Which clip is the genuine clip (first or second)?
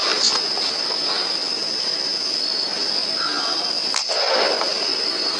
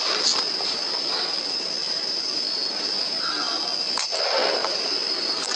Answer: first